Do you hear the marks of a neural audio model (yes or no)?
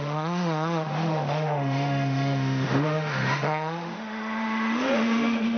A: yes